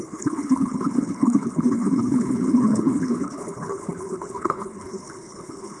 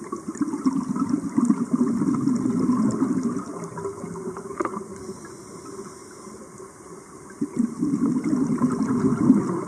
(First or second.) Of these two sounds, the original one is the second